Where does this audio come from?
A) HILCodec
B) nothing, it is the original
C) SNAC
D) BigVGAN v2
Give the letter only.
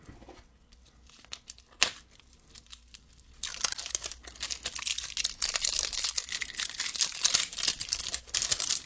B